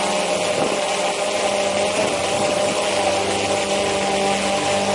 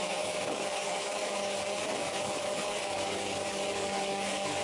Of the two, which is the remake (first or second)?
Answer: second